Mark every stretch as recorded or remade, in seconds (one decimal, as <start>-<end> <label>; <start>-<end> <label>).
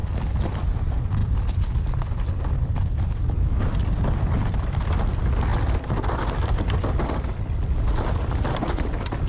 0.0-9.3 recorded